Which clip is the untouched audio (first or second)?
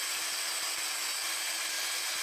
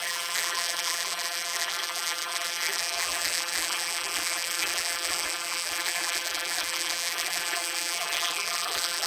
first